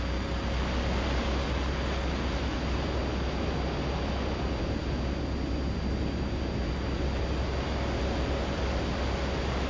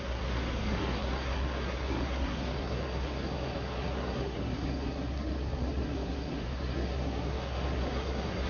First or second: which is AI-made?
second